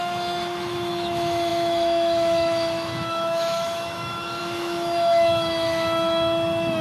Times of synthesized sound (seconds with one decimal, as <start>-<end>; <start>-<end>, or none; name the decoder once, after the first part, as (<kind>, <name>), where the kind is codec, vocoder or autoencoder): 0.0-6.8 (autoencoder, DAC-VAE)